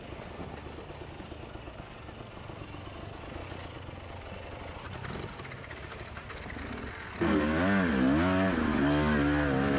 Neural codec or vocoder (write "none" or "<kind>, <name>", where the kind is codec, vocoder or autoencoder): none